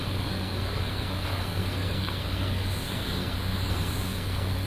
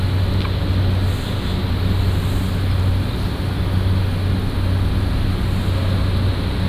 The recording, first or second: second